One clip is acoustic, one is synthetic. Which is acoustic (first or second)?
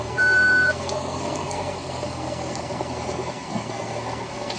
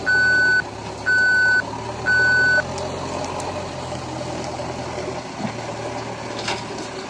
second